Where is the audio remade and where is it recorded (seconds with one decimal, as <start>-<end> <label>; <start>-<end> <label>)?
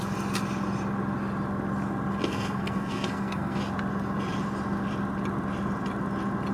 0.0-2.3 recorded; 2.3-3.6 remade; 3.6-6.5 recorded